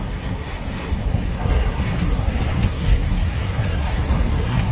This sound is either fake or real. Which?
fake